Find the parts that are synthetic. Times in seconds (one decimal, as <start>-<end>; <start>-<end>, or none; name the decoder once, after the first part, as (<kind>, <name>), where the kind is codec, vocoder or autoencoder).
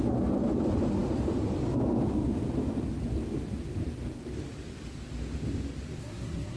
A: 6.0-6.6 (codec, SNAC)